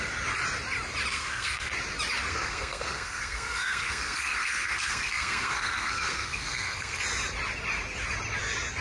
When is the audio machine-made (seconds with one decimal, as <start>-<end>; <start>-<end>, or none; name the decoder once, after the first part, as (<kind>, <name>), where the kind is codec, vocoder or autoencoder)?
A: 1.1-1.7 (codec, SNAC); 2.3-7.0